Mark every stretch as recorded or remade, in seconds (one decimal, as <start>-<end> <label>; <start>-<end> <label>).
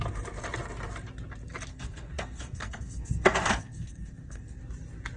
0.0-1.7 recorded; 1.7-4.6 remade; 4.6-5.2 recorded